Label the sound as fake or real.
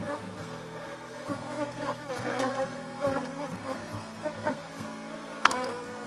fake